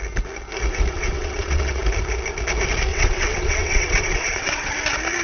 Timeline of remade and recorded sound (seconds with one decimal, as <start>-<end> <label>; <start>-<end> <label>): 0.0-0.9 recorded; 0.9-1.8 remade; 1.8-2.9 recorded; 2.9-4.7 remade; 4.7-5.2 recorded